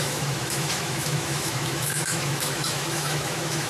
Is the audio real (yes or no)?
no